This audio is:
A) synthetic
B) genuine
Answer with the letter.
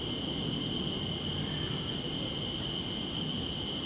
B